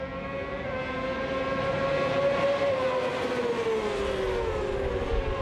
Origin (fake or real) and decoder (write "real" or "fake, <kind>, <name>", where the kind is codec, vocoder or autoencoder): real